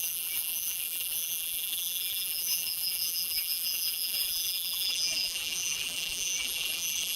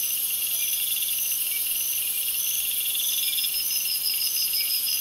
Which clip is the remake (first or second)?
first